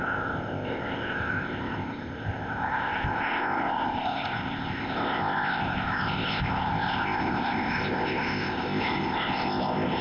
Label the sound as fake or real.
fake